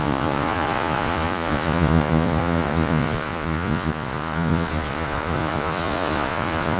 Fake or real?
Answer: fake